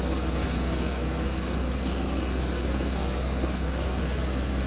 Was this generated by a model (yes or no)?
yes